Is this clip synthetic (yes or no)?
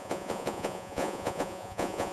yes